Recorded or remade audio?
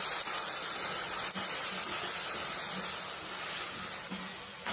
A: recorded